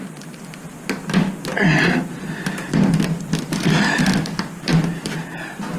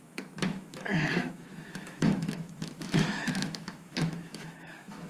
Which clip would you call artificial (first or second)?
second